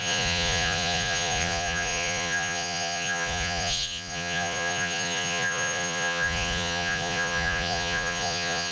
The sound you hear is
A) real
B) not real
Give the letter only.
B